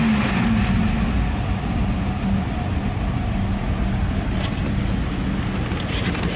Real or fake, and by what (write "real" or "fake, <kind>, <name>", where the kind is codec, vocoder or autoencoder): real